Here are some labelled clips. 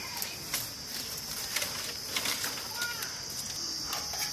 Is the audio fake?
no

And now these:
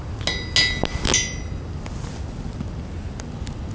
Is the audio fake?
no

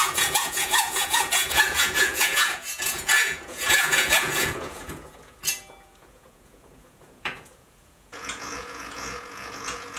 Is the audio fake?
yes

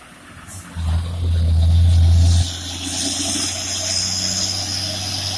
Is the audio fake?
no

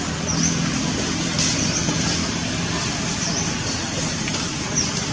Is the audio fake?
no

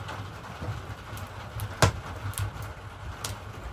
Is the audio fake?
no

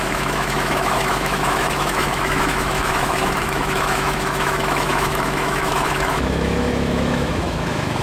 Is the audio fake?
yes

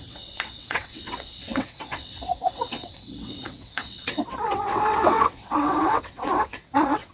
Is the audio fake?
yes